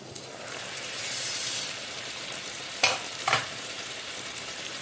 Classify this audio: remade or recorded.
remade